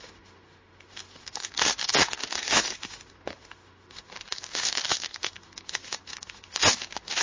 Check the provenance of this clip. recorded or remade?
remade